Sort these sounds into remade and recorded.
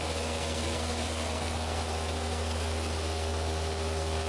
remade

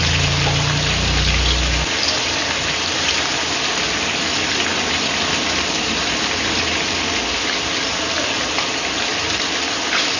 recorded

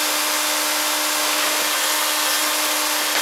recorded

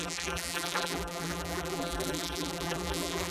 remade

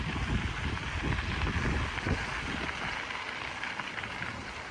recorded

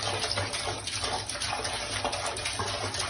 recorded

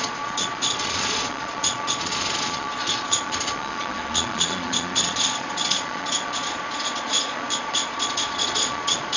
remade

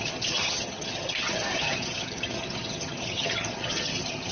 remade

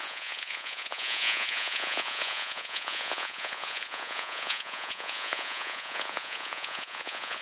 remade